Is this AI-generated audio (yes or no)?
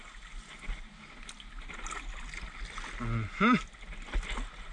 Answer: no